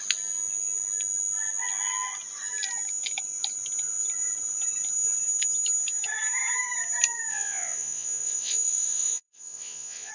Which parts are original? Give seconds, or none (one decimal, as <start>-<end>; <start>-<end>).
0.0-7.3